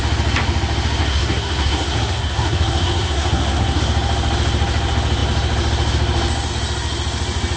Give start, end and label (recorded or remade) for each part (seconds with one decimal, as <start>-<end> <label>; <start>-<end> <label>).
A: 0.0-1.0 recorded; 1.0-3.8 remade; 3.8-7.6 recorded